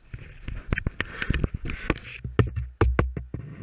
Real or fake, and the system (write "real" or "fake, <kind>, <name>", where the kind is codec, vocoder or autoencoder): real